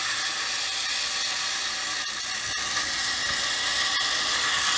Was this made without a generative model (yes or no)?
yes